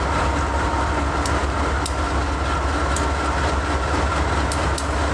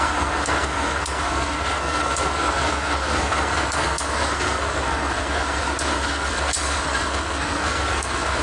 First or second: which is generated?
second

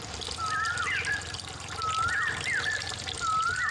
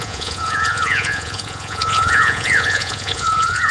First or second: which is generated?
second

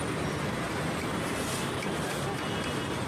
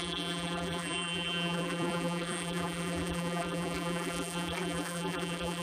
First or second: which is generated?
second